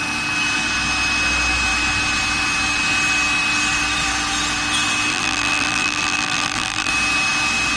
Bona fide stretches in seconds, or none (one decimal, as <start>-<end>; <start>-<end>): 0.0-5.1; 6.9-7.8